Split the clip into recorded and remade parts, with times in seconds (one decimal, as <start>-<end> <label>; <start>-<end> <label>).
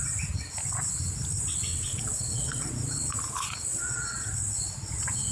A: 0.0-1.7 recorded; 1.7-2.7 remade; 2.7-3.7 recorded; 3.7-4.3 remade; 4.3-5.3 recorded